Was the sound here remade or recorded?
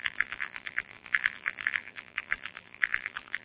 remade